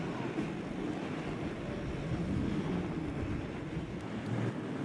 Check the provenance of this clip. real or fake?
real